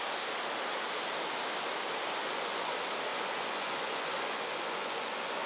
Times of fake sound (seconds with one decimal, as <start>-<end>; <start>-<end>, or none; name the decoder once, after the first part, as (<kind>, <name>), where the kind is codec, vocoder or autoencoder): 2.2-2.7 (vocoder, Vocos); 3.1-5.5